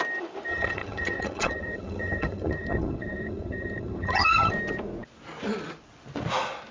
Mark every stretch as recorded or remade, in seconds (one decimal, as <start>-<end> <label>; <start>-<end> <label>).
0.0-0.5 recorded; 0.5-4.5 remade; 4.5-6.7 recorded